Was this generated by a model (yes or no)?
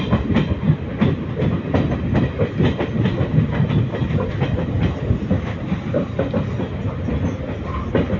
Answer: no